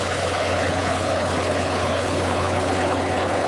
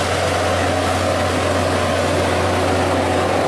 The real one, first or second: second